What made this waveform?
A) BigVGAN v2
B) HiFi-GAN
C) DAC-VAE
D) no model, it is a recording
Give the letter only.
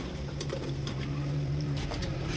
A